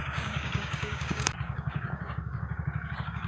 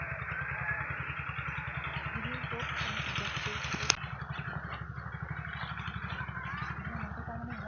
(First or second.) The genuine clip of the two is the second